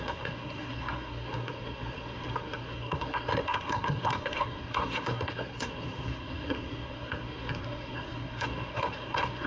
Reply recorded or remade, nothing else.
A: remade